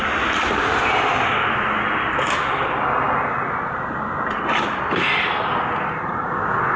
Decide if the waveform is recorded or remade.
recorded